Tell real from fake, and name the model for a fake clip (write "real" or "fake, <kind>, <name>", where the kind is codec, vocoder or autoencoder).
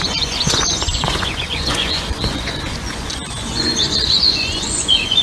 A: fake, vocoder, Vocos